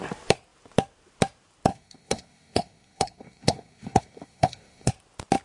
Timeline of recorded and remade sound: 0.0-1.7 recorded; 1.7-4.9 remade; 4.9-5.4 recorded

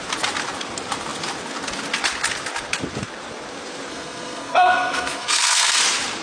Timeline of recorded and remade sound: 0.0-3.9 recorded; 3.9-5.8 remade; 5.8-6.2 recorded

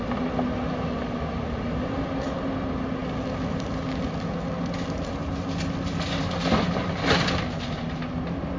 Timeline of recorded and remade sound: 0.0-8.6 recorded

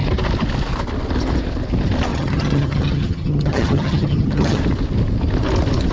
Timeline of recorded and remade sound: 0.0-2.1 recorded; 2.1-4.6 remade; 4.6-5.9 recorded

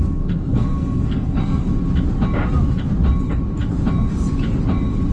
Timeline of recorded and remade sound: 0.0-1.7 remade; 1.7-5.1 recorded